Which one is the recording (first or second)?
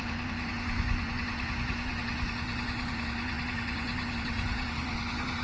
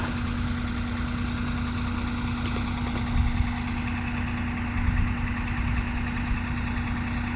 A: second